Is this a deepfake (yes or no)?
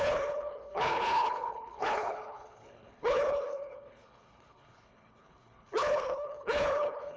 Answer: yes